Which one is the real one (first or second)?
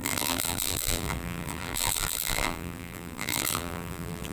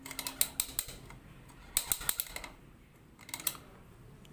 second